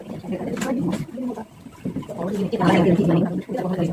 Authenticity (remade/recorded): recorded